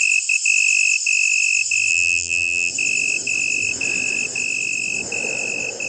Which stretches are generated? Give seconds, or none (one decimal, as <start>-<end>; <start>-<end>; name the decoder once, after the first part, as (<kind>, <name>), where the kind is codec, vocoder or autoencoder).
1.9-2.7 (vocoder, BigVGAN v2)